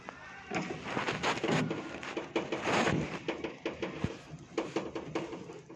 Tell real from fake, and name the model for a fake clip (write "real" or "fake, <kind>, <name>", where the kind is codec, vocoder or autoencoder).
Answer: real